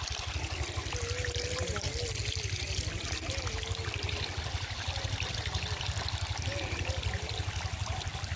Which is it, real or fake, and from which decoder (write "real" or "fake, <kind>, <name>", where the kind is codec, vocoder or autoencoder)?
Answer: real